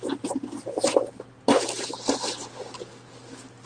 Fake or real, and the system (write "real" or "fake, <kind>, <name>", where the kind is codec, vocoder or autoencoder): real